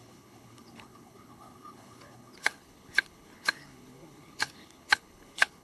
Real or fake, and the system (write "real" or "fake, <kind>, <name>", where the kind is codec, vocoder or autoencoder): fake, codec, HILCodec